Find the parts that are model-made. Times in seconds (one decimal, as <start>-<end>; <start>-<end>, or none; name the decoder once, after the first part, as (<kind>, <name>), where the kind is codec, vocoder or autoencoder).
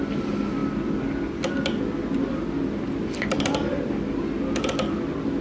none